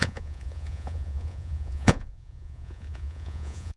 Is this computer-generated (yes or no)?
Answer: yes